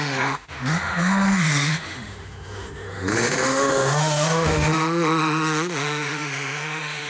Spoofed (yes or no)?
yes